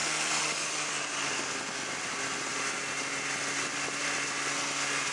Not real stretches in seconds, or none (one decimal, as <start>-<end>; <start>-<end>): 0.0-1.1